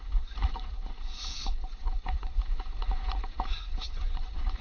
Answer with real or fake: fake